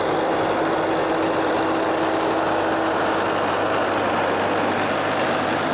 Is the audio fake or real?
real